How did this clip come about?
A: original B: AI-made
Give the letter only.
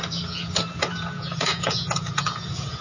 B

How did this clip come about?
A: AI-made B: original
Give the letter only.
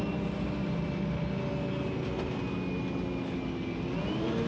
B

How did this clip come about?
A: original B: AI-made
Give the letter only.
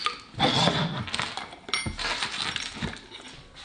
A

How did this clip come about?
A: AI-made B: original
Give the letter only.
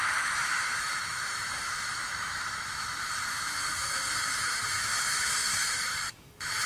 A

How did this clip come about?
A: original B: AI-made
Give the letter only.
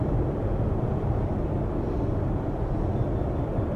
A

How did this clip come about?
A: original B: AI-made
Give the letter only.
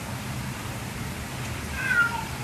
B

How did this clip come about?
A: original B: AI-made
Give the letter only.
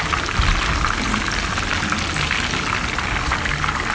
A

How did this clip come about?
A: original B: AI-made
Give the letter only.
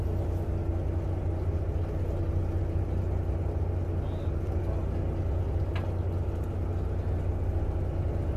A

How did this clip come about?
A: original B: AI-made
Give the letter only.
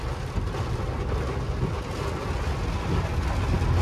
A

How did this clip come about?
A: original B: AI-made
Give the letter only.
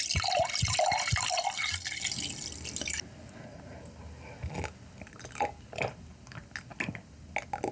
A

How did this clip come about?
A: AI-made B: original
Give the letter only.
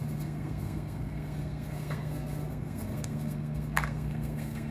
A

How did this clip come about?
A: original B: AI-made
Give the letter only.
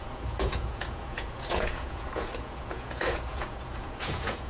B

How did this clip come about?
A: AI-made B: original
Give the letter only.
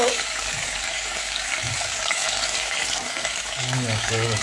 A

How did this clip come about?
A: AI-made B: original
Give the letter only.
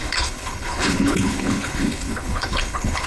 A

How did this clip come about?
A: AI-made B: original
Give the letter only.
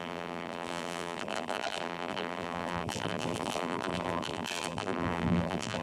A